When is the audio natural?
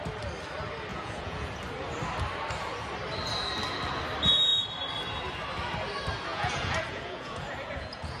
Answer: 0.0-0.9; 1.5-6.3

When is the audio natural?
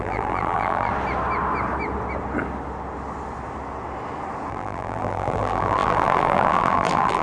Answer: 0.9-4.5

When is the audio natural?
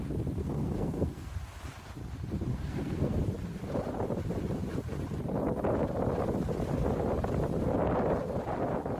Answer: 0.0-0.4; 1.3-2.5; 3.2-9.0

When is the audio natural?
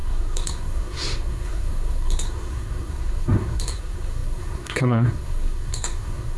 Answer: none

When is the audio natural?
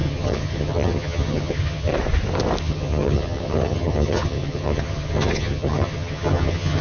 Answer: 1.9-2.6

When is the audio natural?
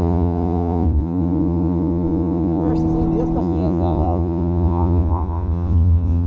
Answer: 2.7-3.4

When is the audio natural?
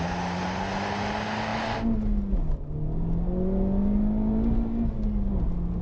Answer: 0.0-5.8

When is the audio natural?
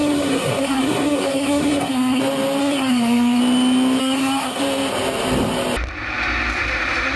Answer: 2.2-2.6; 3.4-4.0; 4.6-7.2